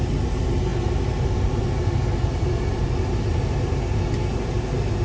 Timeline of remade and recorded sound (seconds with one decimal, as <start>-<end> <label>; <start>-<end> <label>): 0.0-5.0 recorded